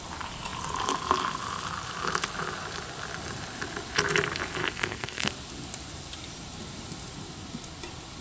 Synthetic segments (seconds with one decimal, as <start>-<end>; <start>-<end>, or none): 4.6-5.3